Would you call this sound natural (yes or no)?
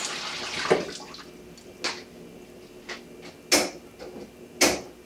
yes